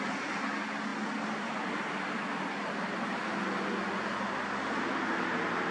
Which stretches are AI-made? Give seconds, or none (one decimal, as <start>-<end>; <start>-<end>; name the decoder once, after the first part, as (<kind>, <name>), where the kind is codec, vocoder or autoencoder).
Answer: none

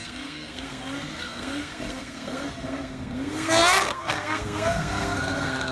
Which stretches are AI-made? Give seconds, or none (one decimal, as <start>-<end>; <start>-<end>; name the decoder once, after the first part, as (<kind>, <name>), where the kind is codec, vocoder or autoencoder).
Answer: 0.0-5.7 (codec, SNAC)